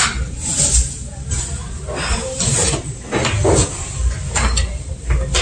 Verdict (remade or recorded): recorded